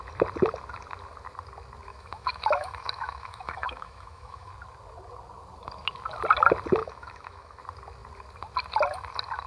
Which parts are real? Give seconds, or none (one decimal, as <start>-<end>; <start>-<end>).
0.0-1.9; 4.5-6.8; 7.6-9.5